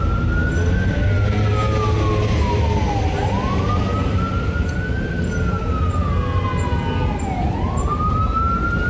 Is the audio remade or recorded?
recorded